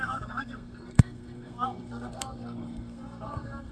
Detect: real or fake fake